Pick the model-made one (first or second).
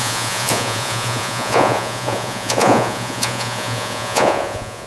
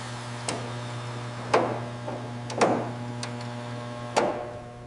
first